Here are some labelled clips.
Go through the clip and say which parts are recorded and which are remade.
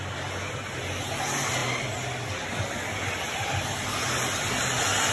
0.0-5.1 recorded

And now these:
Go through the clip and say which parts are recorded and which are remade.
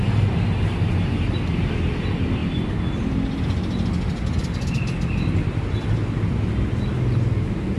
0.0-7.8 recorded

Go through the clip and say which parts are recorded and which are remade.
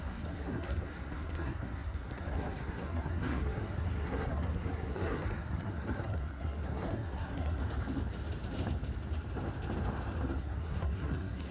0.0-7.6 remade; 7.6-10.4 recorded; 10.4-11.5 remade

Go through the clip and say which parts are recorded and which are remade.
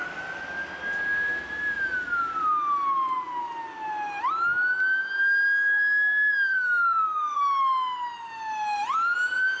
0.0-6.5 recorded; 6.5-7.4 remade; 7.4-9.6 recorded